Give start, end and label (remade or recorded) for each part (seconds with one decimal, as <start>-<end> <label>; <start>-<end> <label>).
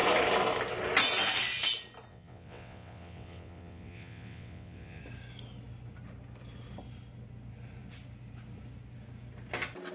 0.0-2.1 recorded; 2.1-5.0 remade; 5.0-9.9 recorded